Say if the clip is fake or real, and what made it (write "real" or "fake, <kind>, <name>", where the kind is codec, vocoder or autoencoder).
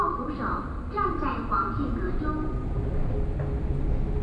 real